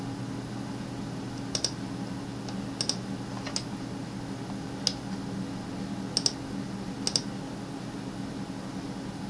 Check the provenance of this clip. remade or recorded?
recorded